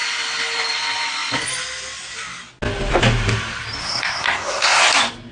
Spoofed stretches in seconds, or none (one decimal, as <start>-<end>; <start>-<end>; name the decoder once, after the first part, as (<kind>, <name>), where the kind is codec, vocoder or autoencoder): 3.8-4.8 (codec, SNAC)